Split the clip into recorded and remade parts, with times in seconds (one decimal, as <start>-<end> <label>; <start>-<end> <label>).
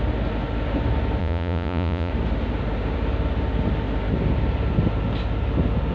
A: 0.0-1.2 recorded; 1.2-2.1 remade; 2.1-5.9 recorded